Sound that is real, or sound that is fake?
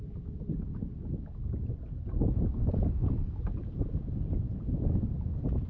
real